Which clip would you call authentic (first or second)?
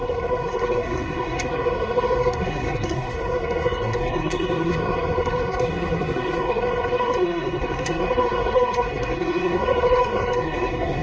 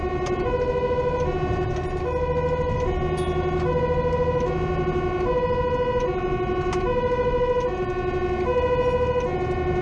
second